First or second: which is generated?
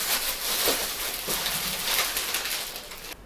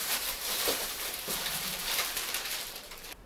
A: second